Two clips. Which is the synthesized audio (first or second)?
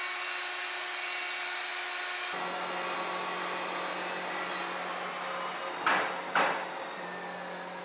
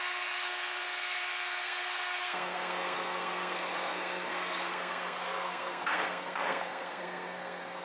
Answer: second